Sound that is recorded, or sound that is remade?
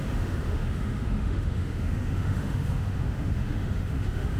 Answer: remade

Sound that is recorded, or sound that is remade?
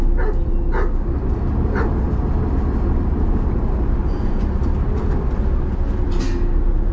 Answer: recorded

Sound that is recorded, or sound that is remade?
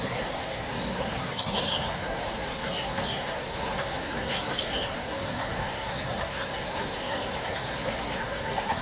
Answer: remade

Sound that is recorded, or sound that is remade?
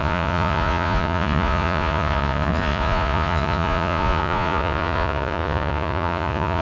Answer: remade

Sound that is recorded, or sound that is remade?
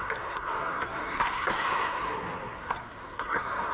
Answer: remade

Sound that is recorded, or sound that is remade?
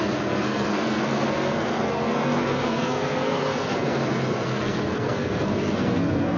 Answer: remade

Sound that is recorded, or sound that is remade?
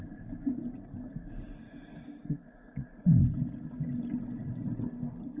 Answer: recorded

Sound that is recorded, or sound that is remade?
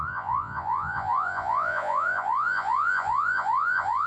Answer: remade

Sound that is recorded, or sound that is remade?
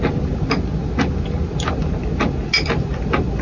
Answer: recorded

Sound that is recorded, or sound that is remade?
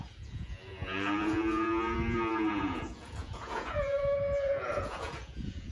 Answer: remade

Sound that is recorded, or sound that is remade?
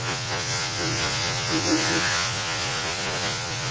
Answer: remade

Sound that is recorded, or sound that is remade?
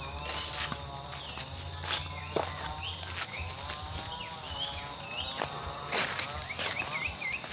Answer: recorded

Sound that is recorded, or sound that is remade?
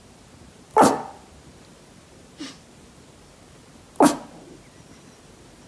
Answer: recorded